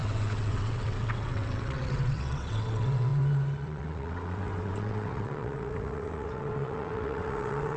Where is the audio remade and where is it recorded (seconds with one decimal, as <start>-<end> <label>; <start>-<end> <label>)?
0.0-7.8 remade